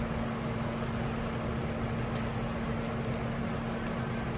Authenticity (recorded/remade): recorded